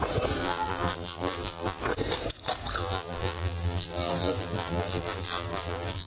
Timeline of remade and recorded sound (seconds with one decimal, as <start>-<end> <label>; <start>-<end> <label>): 0.0-0.4 recorded; 0.4-1.8 remade; 1.8-2.8 recorded; 2.8-6.1 remade